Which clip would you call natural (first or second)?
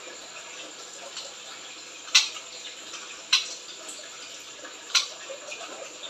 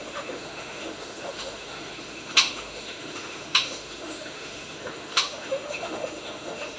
first